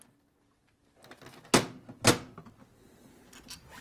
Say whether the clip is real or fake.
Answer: real